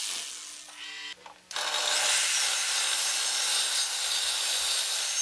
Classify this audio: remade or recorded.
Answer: recorded